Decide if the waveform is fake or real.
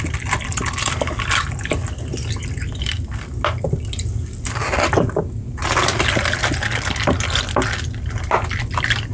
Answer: real